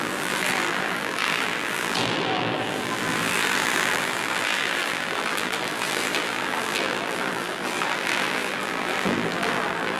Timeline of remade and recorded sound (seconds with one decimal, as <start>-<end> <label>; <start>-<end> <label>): 0.0-10.0 remade